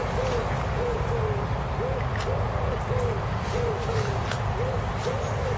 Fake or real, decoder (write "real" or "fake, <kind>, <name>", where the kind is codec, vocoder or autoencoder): real